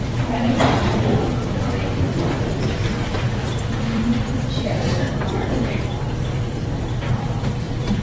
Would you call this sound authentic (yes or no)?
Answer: no